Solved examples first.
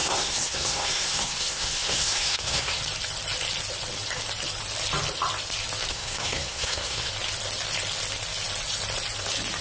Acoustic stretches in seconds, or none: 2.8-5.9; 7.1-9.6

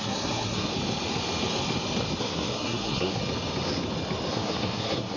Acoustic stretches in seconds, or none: 0.7-2.2; 3.2-4.3